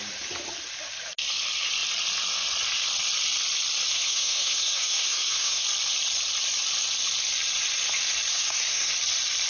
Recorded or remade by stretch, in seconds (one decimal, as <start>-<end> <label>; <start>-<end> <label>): 0.0-3.9 recorded; 3.9-5.6 remade; 5.6-8.3 recorded; 8.3-8.9 remade; 8.9-9.5 recorded